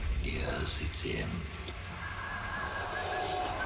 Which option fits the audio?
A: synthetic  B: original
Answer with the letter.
B